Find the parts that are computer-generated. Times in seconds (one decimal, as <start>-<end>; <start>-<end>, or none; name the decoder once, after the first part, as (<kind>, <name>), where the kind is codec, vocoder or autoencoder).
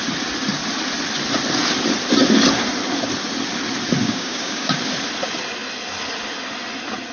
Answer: 4.0-4.8 (codec, DAC)